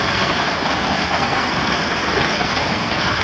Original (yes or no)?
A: no